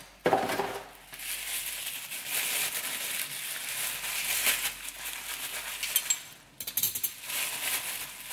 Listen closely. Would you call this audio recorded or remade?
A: recorded